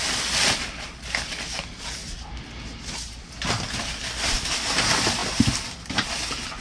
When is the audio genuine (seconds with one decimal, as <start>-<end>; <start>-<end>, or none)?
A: 0.0-6.6